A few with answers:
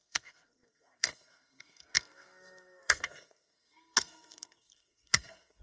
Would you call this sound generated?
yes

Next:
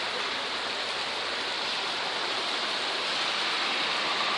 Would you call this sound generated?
no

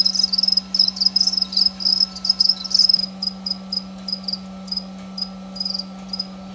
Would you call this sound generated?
no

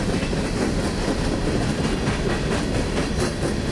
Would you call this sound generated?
no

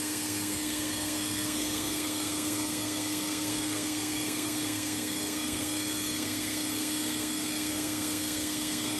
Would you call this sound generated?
yes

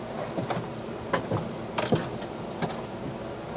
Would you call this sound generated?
no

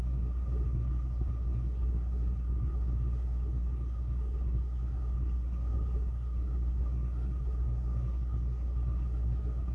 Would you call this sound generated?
yes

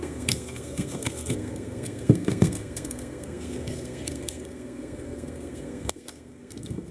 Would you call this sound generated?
yes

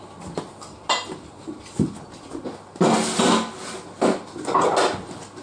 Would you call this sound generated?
no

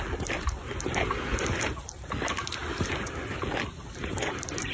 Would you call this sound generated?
no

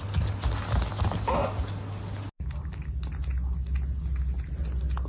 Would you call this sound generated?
no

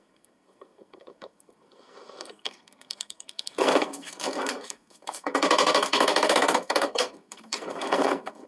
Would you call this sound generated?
yes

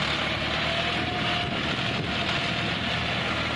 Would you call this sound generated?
no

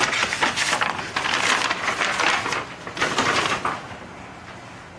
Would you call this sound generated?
no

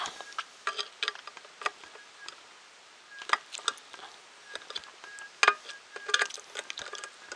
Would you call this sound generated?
no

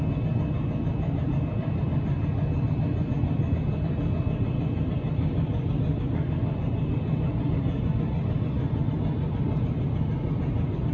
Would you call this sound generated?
no